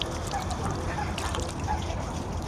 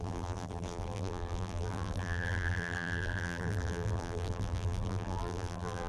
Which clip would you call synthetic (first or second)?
second